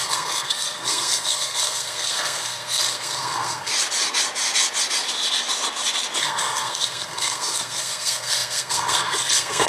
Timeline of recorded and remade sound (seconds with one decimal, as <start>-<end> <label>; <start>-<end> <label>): 0.0-3.7 remade; 3.7-6.2 recorded; 6.2-9.7 remade